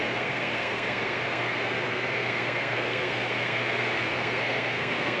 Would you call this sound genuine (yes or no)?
no